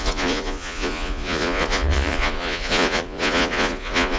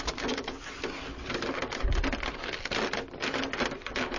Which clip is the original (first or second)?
second